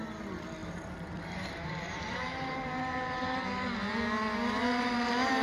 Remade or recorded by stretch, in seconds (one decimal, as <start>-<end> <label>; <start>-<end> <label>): 0.0-0.6 recorded; 0.6-3.5 remade; 3.5-5.4 recorded